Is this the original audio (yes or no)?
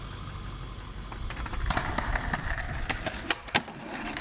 yes